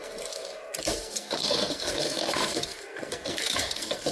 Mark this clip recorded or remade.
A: remade